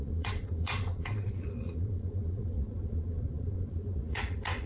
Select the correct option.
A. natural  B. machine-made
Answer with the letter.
B